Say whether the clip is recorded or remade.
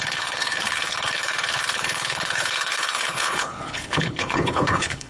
remade